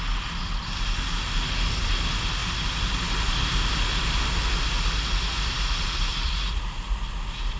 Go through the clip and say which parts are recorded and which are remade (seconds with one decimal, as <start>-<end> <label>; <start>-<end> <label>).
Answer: 0.0-6.1 recorded; 6.1-7.0 remade; 7.0-7.6 recorded